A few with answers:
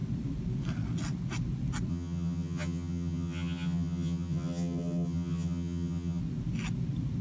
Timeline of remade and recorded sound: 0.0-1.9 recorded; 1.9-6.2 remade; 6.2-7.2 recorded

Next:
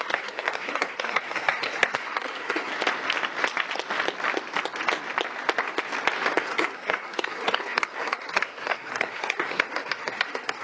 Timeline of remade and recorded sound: 0.0-2.7 remade; 2.7-6.4 recorded; 6.4-10.6 remade